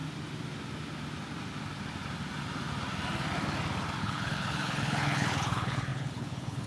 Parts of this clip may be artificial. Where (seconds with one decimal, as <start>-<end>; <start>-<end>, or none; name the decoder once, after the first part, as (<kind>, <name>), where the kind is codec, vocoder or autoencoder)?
4.0-6.7 (codec, HILCodec)